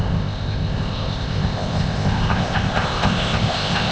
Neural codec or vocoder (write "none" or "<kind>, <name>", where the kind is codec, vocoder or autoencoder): codec, ZipCodec